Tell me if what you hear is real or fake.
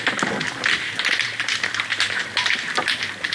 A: real